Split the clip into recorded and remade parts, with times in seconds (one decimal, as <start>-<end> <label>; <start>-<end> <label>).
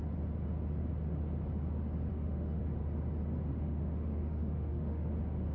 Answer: 0.0-2.1 recorded; 2.1-2.6 remade; 2.6-3.5 recorded; 3.5-5.1 remade; 5.1-5.5 recorded